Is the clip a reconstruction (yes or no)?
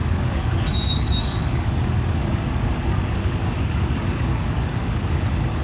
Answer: yes